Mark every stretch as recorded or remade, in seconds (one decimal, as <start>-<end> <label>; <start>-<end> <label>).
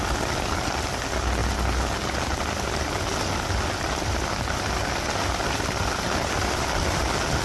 0.0-7.4 recorded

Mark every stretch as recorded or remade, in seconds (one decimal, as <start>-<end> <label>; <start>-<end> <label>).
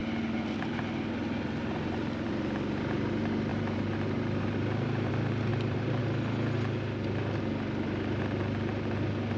0.0-3.5 recorded; 3.5-5.1 remade; 5.1-5.5 recorded; 5.5-6.0 remade; 6.0-9.4 recorded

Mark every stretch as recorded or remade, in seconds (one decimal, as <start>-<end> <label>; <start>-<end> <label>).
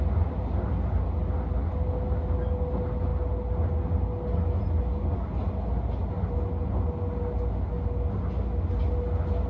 0.0-9.5 recorded